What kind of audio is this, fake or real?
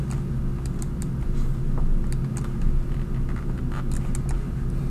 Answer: real